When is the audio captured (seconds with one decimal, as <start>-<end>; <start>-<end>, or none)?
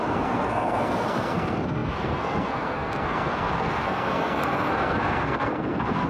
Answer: none